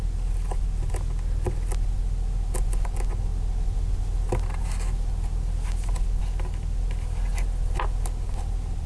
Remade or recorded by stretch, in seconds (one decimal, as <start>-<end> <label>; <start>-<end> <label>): 0.0-8.9 recorded